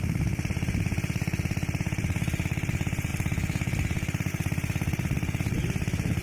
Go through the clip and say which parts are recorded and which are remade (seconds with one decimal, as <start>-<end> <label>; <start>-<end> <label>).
0.0-6.2 recorded